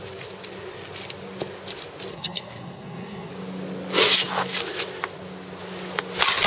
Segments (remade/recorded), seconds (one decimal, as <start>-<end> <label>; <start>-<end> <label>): 0.0-2.1 recorded; 2.1-3.3 remade; 3.3-6.5 recorded